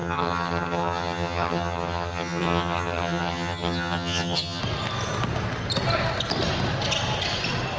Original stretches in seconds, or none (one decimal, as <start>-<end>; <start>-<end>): 4.6-7.8